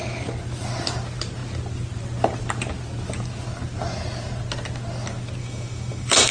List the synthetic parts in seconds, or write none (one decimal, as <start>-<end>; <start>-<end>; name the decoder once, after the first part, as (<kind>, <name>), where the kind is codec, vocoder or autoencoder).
5.4-6.3 (autoencoder, DAC-VAE)